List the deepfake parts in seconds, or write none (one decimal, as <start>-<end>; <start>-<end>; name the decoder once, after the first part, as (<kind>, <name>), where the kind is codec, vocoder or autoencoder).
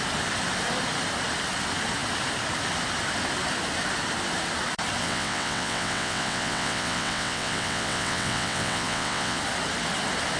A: 5.0-9.4 (vocoder, WaveNeXt)